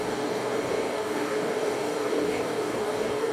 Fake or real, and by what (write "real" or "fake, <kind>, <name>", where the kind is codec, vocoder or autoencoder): fake, codec, DAC